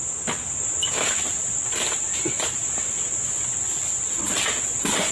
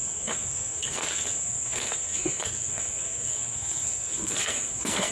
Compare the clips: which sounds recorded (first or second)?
first